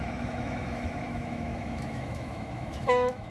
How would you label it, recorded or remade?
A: remade